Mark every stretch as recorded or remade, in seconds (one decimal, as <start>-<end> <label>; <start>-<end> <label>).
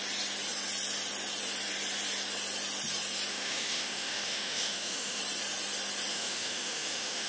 0.0-3.3 recorded; 3.3-5.2 remade; 5.2-6.1 recorded; 6.1-7.3 remade